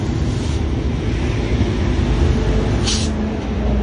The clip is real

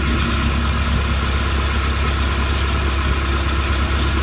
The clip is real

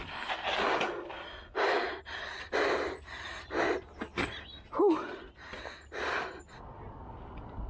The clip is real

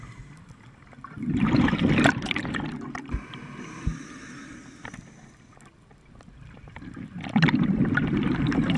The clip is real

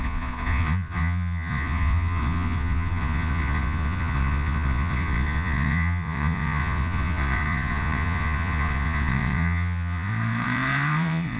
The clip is fake